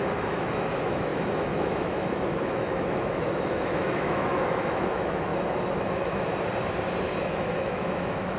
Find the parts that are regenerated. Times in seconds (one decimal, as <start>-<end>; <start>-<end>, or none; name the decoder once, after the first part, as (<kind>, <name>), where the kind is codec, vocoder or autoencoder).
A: 0.0-5.3 (autoencoder, DAC-VAE); 5.8-6.3; 7.2-8.4